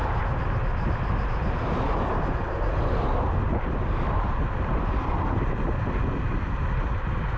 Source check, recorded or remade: recorded